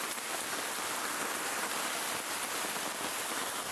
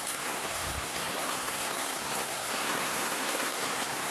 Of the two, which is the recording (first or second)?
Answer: first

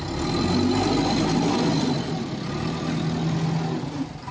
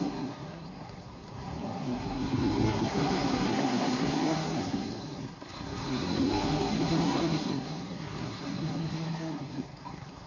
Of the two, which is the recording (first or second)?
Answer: first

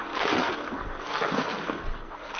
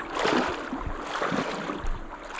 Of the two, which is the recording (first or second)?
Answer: second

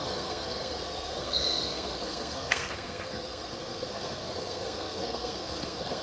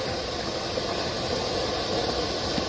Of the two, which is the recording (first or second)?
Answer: second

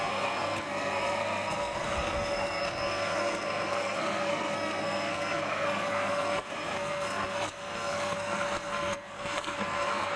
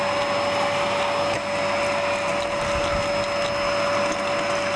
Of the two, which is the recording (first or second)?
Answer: second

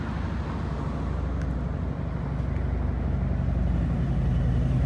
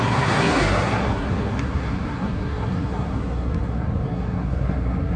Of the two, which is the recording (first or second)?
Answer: first